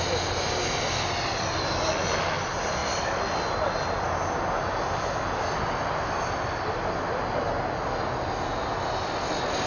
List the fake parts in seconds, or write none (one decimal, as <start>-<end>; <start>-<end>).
none